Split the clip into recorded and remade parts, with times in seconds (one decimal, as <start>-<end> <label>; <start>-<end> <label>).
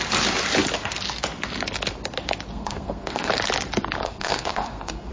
0.0-2.5 recorded; 2.5-3.3 remade; 3.3-4.0 recorded; 4.0-5.1 remade